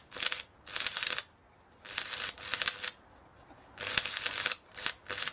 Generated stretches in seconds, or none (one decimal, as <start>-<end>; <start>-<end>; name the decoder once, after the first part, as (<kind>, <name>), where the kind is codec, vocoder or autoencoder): none